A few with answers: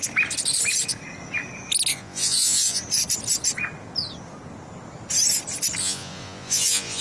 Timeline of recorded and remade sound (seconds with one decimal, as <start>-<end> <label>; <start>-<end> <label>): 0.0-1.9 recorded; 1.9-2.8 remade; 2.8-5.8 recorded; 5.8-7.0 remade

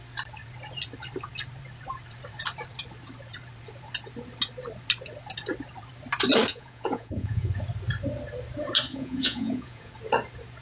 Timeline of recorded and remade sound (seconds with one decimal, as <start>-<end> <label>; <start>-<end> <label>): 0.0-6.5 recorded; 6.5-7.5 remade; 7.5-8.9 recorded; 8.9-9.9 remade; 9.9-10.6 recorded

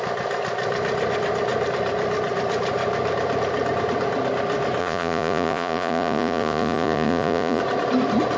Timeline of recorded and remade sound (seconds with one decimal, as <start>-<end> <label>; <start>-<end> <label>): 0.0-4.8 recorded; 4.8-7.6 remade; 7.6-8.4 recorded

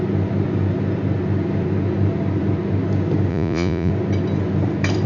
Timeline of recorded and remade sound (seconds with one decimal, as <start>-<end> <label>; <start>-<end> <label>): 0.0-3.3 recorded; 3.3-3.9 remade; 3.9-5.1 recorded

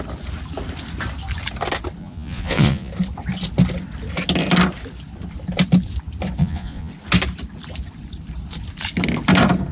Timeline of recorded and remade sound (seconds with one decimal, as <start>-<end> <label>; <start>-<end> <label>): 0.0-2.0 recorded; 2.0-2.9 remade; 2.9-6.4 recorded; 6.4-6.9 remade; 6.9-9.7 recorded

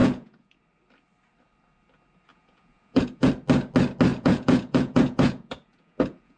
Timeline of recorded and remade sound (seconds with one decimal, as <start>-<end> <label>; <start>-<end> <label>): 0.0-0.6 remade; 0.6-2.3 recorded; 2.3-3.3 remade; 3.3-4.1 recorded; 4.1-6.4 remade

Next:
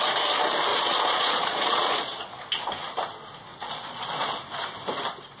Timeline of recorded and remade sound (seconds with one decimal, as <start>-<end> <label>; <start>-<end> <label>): 0.0-0.7 recorded; 0.7-2.4 remade; 2.4-3.5 recorded; 3.5-4.4 remade; 4.4-5.4 recorded

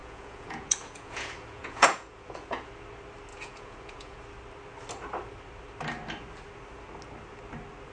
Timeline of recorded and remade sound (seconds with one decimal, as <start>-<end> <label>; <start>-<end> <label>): 0.0-2.7 remade; 2.7-3.3 recorded; 3.3-4.2 remade; 4.2-7.9 recorded